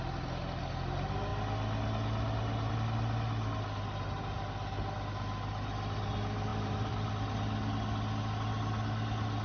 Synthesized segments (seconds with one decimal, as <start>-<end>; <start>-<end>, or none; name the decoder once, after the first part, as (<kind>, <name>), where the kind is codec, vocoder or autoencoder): 6.5-7.1 (vocoder, BigVGAN v2)